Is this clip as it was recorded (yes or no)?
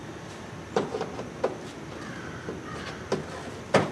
yes